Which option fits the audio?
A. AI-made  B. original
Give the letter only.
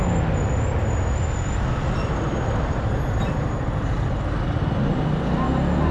B